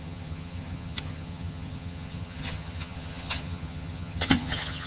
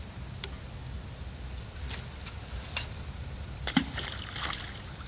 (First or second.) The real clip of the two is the second